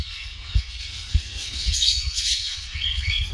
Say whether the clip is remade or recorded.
remade